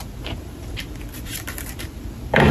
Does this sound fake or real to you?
fake